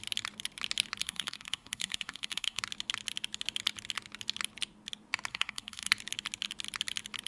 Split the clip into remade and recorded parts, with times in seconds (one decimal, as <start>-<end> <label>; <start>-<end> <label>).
0.0-1.0 recorded; 1.0-2.6 remade; 2.6-5.3 recorded; 5.3-5.9 remade; 5.9-7.3 recorded